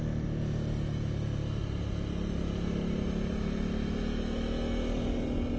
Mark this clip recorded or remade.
recorded